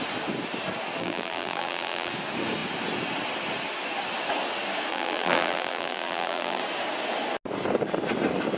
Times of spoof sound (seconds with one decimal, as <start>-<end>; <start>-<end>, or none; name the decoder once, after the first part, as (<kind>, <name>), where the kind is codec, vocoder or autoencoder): 1.0-2.1 (vocoder, BigVGAN v2); 4.9-6.6